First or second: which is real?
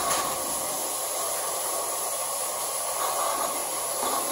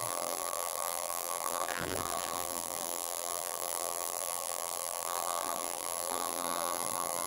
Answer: first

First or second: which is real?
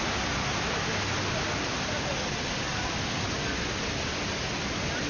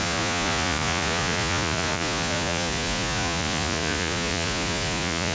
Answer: first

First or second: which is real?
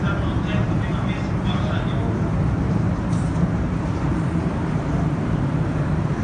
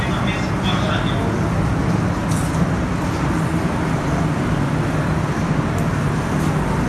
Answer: second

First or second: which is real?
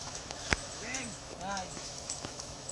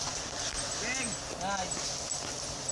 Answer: second